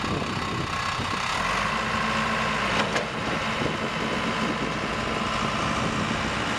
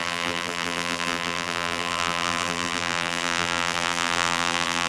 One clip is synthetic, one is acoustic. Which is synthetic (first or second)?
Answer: second